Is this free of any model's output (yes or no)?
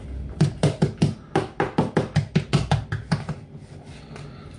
yes